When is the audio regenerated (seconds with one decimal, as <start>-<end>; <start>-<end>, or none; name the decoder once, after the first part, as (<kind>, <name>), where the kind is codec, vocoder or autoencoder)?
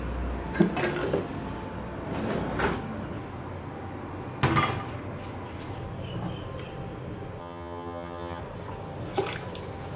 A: 7.4-8.4 (vocoder, HiFi-GAN)